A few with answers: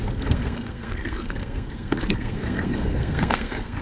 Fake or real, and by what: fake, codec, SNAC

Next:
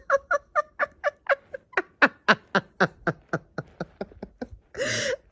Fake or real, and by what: real